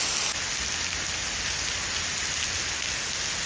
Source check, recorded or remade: recorded